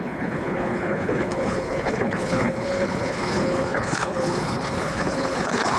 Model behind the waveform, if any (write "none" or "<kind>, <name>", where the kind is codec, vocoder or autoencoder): codec, HILCodec